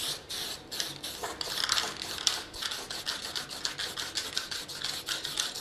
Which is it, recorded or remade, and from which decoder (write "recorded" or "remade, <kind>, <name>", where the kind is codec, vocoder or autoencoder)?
recorded